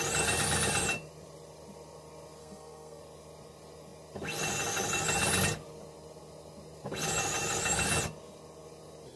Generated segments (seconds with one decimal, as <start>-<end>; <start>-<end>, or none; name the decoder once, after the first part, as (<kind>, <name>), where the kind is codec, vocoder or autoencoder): 2.4-3.0 (codec, SNAC)